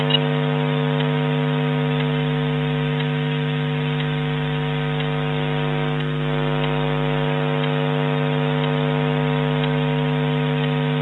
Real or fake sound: real